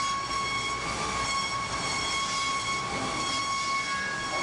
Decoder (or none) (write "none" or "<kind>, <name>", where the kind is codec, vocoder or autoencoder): none